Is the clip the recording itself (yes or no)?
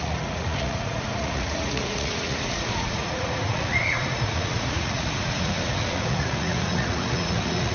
no